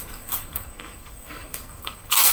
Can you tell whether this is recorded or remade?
remade